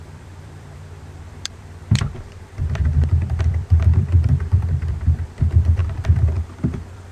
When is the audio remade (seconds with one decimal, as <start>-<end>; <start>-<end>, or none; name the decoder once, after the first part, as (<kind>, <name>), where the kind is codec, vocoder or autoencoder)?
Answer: 0.0-7.1 (vocoder, BigVGAN v2)